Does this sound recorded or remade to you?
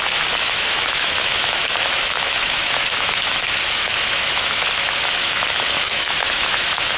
remade